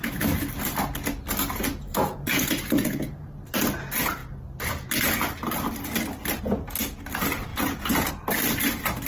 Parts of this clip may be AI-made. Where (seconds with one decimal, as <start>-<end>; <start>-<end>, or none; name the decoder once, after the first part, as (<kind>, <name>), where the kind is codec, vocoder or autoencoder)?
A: 1.9-3.3 (vocoder, Vocos); 7.5-8.1